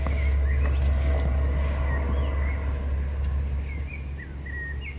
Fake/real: real